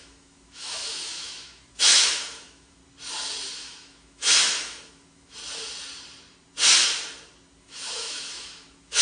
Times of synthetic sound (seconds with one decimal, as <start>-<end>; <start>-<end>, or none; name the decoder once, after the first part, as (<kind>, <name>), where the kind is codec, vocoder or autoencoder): 0.0-2.8 (autoencoder, DAC-VAE); 3.5-5.4; 7.6-9.0